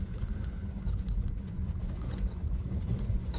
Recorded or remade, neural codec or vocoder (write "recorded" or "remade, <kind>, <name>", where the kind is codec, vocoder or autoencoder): remade, vocoder, Vocos